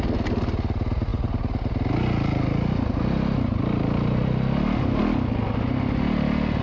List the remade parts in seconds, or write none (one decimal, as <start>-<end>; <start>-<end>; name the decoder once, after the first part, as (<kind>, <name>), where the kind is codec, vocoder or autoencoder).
none